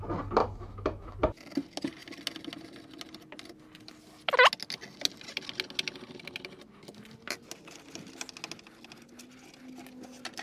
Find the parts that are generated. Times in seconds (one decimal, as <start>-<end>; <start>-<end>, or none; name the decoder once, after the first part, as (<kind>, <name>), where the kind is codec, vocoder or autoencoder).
0.4-1.2 (autoencoder, DAC-VAE)